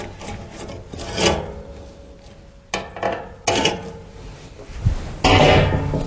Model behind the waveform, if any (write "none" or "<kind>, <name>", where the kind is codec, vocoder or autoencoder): none